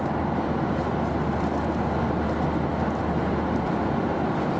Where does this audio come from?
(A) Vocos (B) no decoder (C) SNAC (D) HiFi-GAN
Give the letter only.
B